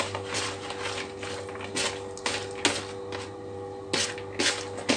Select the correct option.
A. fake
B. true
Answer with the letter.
B